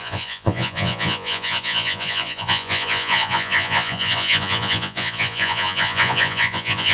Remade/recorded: remade